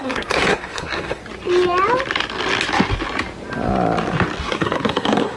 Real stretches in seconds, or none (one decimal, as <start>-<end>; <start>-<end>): 1.2-4.4

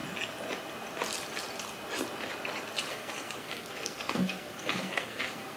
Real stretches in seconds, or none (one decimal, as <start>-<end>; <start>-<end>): 0.0-2.9

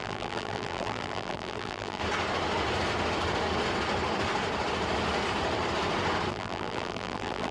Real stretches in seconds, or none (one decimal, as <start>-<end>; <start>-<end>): 2.0-6.3

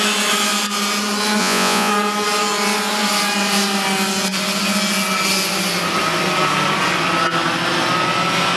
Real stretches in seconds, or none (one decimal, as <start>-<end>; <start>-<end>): 0.0-1.4; 1.9-8.6